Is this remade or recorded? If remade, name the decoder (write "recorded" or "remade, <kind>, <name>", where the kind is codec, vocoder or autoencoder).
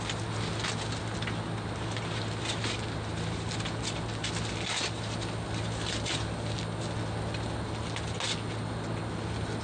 recorded